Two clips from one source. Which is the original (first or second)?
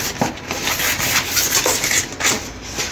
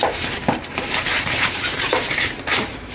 first